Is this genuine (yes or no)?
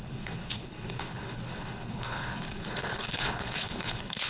no